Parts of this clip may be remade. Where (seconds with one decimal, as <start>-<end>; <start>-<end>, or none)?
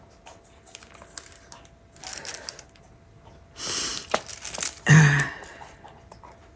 none